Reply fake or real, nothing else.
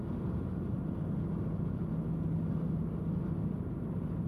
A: real